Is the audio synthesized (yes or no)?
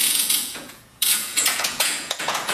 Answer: yes